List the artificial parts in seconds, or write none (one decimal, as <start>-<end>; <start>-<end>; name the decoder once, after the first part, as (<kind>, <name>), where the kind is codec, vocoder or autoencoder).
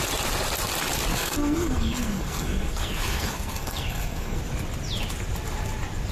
1.1-4.4 (codec, SNAC)